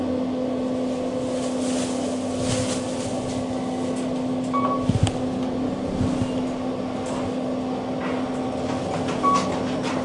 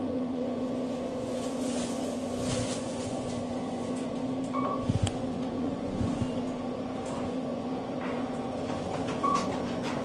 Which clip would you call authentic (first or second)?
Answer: first